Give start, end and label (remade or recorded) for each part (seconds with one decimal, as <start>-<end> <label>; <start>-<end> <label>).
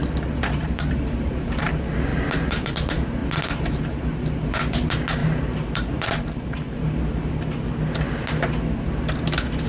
0.0-1.7 remade; 1.7-2.1 recorded; 2.1-2.7 remade; 2.7-5.2 recorded; 5.2-7.3 remade; 7.3-9.7 recorded